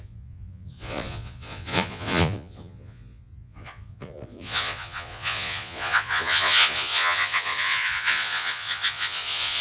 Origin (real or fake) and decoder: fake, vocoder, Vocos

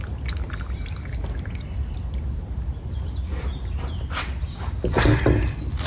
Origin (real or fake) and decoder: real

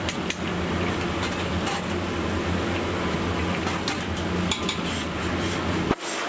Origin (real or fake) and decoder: real